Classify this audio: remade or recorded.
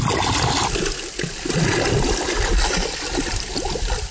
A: recorded